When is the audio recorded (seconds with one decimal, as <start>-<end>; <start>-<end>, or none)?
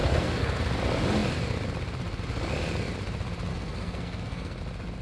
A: 0.6-3.5; 4.6-5.0